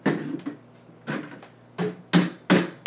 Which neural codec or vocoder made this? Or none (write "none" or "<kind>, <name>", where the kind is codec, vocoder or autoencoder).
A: none